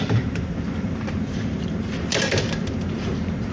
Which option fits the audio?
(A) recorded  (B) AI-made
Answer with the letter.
B